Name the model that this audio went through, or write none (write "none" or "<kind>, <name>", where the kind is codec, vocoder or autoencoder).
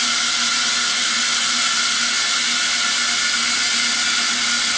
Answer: none